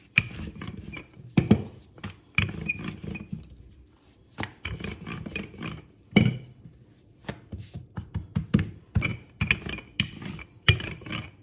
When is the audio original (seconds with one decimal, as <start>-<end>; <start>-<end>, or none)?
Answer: 1.8-3.2; 9.1-10.0